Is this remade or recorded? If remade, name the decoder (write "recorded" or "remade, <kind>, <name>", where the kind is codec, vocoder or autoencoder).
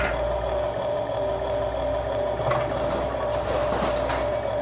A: recorded